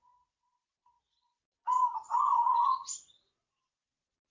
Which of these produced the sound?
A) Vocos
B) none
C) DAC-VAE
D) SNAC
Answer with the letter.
A